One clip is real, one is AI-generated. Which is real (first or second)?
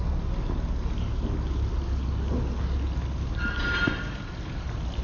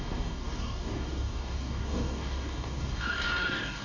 first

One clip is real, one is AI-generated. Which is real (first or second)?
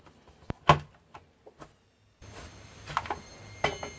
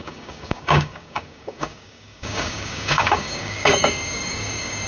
first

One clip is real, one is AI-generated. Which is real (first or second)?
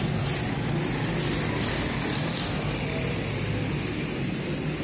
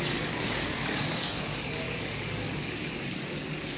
first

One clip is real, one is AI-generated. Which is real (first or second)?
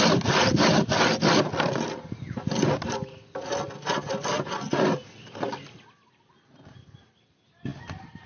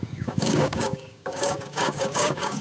first